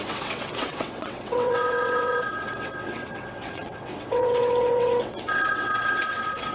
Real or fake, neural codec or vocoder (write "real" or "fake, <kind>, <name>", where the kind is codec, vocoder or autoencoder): fake, vocoder, WaveNeXt